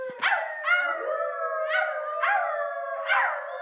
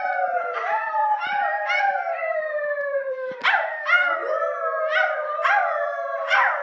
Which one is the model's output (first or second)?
second